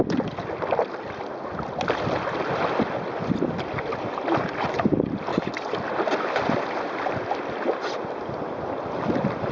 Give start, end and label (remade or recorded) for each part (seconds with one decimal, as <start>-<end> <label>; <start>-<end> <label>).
0.0-5.3 recorded; 5.3-7.0 remade; 7.0-9.5 recorded